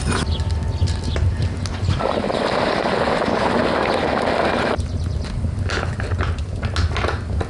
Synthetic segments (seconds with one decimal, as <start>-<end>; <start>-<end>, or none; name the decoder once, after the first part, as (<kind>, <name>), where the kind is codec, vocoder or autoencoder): none

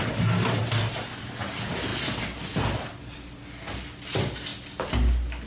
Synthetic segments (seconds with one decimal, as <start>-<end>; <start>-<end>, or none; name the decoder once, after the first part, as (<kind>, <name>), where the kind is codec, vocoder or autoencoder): none

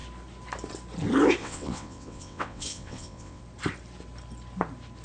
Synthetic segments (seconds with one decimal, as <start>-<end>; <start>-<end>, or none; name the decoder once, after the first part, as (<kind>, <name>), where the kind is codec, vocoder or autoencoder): 1.4-3.4 (vocoder, WaveNeXt)

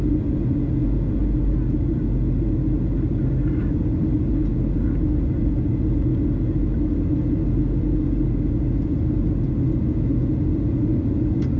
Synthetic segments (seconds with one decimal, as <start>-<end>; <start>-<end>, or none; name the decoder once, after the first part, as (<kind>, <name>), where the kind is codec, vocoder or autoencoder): none